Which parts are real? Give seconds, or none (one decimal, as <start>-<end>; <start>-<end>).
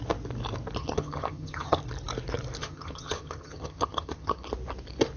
0.0-0.8; 1.8-2.6; 4.5-5.2